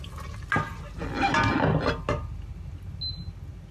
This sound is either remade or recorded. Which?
recorded